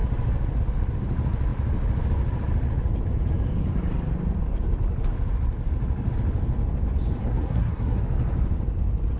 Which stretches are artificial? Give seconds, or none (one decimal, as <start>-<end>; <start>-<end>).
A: 7.2-8.0